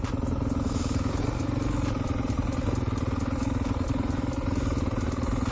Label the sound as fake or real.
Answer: real